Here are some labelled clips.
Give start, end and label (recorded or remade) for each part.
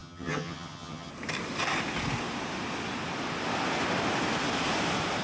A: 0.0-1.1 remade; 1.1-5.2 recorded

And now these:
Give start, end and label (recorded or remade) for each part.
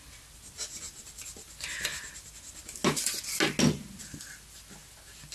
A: 0.0-5.3 recorded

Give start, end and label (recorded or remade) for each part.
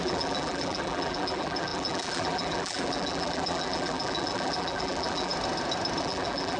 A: 0.0-5.3 remade; 5.3-6.0 recorded; 6.0-6.6 remade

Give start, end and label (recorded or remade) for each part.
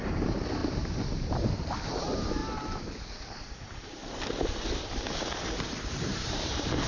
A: 0.0-0.6 remade; 0.6-2.0 recorded; 2.0-2.4 remade; 2.4-5.7 recorded; 5.7-6.9 remade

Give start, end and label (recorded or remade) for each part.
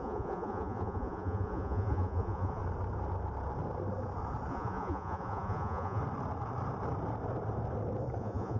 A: 0.0-2.6 remade; 2.6-4.5 recorded; 4.5-6.0 remade; 6.0-8.2 recorded; 8.2-8.6 remade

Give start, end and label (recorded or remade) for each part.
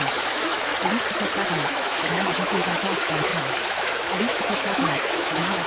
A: 0.0-0.7 remade; 0.7-1.5 recorded; 1.5-5.7 remade